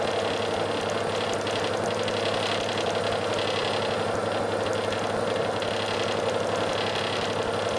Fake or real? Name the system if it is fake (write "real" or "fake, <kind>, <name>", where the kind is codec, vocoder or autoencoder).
real